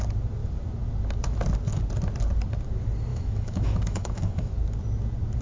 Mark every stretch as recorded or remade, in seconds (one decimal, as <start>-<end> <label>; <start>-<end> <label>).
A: 0.0-3.1 recorded; 3.1-4.5 remade; 4.5-5.4 recorded

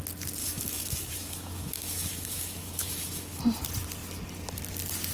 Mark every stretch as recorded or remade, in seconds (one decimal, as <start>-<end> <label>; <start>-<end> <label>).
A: 0.0-0.4 recorded; 0.4-3.4 remade; 3.4-5.1 recorded

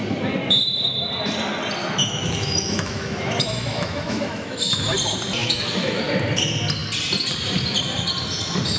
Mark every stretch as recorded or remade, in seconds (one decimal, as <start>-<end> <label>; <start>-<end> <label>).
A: 0.0-1.8 recorded; 1.8-4.6 remade; 4.6-5.4 recorded; 5.4-6.0 remade; 6.0-8.8 recorded

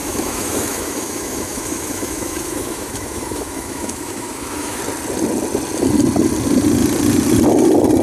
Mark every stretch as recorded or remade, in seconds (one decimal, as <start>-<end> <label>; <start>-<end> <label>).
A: 0.0-4.8 remade; 4.8-8.0 recorded

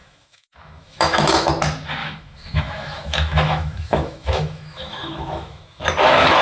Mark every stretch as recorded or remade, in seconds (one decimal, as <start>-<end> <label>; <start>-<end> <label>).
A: 0.0-1.5 remade; 1.5-2.0 recorded; 2.0-5.8 remade; 5.8-6.4 recorded

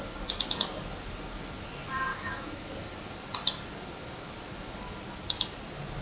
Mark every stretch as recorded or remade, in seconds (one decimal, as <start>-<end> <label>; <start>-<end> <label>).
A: 0.0-2.1 recorded; 2.1-2.7 remade; 2.7-6.0 recorded

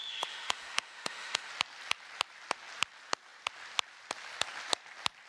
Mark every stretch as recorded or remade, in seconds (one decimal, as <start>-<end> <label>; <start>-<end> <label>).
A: 0.0-1.5 remade; 1.5-5.3 recorded